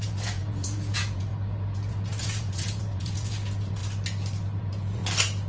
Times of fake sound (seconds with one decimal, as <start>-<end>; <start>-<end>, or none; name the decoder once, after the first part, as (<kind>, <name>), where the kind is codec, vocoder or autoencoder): 0.0-3.8 (vocoder, Vocos); 4.6-5.0